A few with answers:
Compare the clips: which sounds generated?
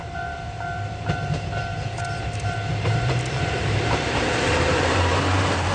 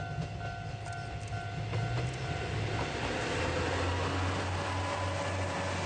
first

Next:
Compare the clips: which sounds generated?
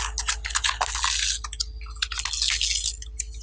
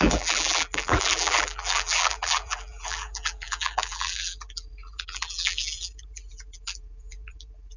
second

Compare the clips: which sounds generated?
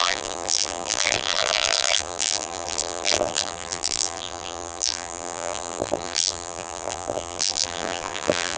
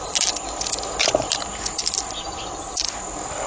first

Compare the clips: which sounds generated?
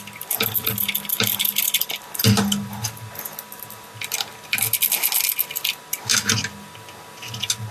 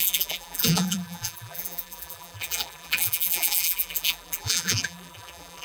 second